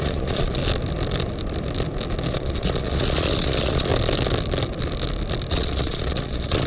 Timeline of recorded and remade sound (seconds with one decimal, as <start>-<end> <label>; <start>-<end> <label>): 0.0-0.6 remade; 0.6-2.3 recorded; 2.3-3.9 remade; 3.9-5.5 recorded; 5.5-6.7 remade